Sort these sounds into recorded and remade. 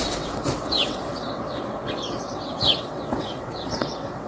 remade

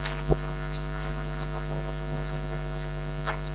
recorded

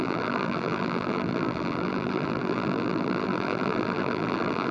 remade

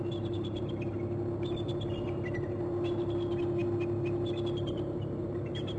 recorded